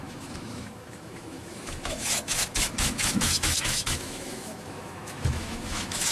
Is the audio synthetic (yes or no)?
yes